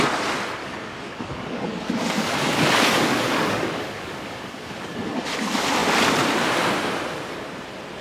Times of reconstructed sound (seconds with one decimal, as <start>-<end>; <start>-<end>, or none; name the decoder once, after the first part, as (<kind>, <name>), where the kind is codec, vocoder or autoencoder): 0.6-5.2 (codec, DAC)